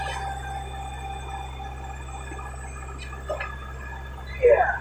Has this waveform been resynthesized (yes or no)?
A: no